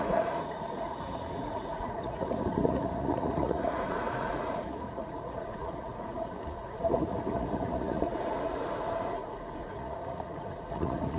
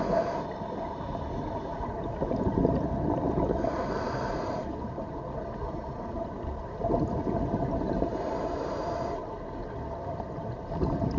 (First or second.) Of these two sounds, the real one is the second